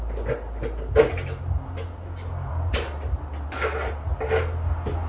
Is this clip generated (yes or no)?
no